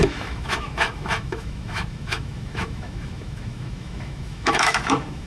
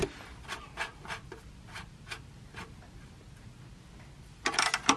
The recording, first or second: second